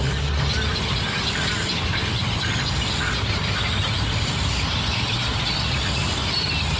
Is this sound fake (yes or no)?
no